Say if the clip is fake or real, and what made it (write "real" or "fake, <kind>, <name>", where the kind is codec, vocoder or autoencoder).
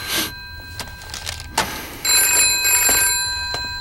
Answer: real